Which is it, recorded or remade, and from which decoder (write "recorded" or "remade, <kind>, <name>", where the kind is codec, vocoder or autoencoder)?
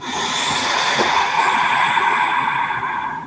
remade, vocoder, Vocos